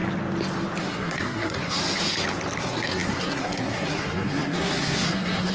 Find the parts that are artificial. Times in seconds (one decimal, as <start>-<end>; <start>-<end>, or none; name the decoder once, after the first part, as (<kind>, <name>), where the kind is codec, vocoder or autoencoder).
0.8-1.8 (codec, SNAC); 2.6-5.5